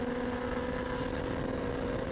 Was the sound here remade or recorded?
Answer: recorded